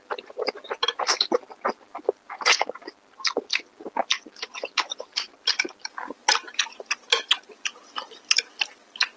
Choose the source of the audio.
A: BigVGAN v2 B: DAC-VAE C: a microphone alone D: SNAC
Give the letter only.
C